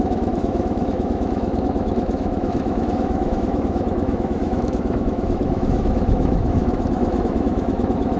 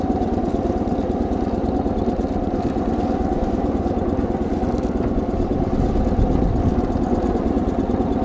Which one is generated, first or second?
first